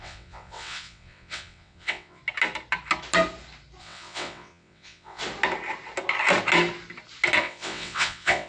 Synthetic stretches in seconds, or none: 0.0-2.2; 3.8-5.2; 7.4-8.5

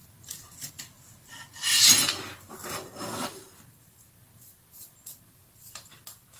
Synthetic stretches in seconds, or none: 0.0-0.7

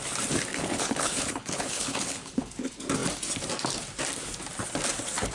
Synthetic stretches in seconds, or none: 0.5-2.5